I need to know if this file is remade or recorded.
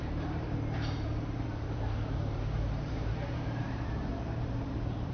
remade